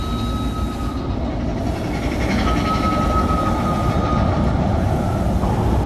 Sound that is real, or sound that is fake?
real